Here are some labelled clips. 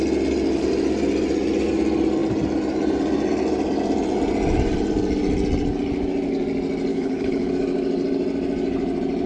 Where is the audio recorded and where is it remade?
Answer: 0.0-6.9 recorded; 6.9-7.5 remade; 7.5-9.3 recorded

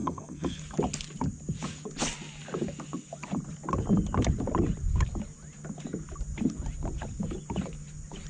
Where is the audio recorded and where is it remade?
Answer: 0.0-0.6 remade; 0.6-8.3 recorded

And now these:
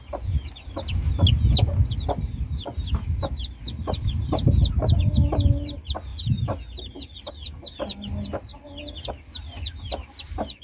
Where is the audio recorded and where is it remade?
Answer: 0.0-10.6 recorded

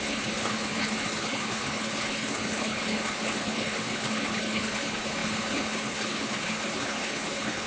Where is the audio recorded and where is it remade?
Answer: 0.0-7.7 remade

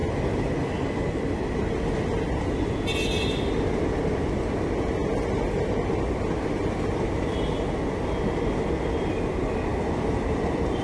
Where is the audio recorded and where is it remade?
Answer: 0.0-10.8 recorded

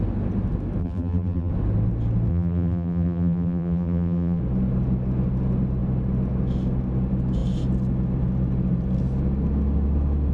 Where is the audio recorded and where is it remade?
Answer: 0.0-0.8 recorded; 0.8-1.5 remade; 1.5-2.3 recorded; 2.3-4.4 remade; 4.4-10.3 recorded

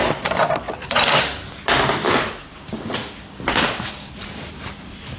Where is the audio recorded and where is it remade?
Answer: 0.0-1.0 remade; 1.0-2.0 recorded; 2.0-3.9 remade; 3.9-5.2 recorded